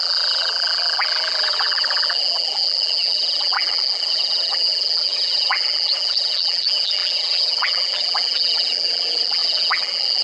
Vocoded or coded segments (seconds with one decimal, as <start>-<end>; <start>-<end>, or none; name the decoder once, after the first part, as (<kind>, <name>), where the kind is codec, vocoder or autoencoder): 0.0-10.2 (vocoder, BigVGAN v2)